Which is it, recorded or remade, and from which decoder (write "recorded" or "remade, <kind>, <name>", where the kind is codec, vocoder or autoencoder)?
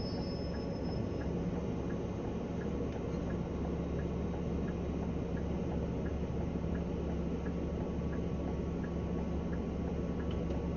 recorded